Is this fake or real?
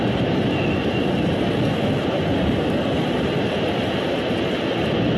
real